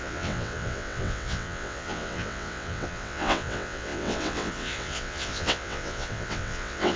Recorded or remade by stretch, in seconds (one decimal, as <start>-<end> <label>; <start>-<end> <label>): 0.0-7.0 remade